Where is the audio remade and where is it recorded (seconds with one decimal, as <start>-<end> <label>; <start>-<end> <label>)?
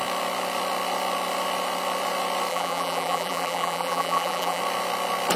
0.0-2.5 recorded; 2.5-4.6 remade; 4.6-5.4 recorded